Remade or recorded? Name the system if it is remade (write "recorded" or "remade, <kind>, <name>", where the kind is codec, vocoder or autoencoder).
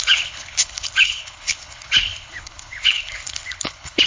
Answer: remade, codec, HILCodec